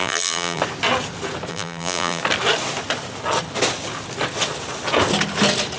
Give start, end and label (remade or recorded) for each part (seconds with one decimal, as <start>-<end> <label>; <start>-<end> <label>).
0.0-0.6 remade; 0.6-1.5 recorded; 1.5-2.2 remade; 2.2-5.8 recorded